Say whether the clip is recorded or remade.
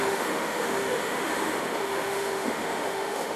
remade